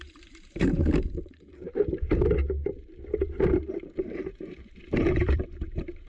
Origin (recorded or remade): remade